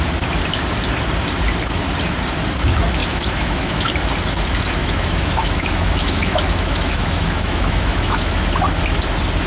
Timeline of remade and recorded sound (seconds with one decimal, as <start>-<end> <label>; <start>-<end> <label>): 0.0-3.0 recorded; 3.0-3.9 remade; 3.9-4.8 recorded; 4.8-8.4 remade; 8.4-9.5 recorded